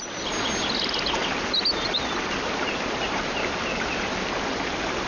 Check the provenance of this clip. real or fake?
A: real